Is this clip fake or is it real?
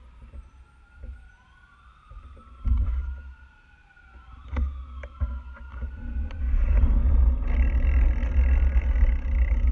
real